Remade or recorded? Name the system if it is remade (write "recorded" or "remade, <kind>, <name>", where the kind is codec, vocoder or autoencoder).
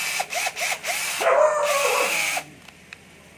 recorded